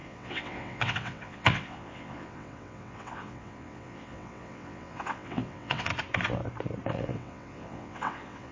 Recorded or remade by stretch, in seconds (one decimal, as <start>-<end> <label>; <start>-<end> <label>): 0.0-5.9 remade; 5.9-6.9 recorded; 6.9-8.5 remade